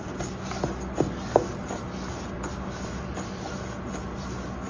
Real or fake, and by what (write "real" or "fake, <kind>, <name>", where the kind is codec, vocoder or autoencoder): real